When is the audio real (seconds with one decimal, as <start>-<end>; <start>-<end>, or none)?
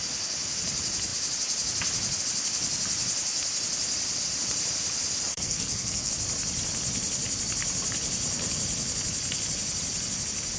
0.0-5.3; 6.1-10.6